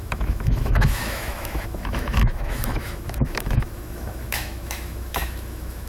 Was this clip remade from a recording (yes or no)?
yes